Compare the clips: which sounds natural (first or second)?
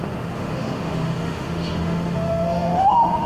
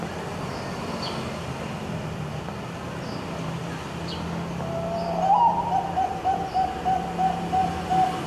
second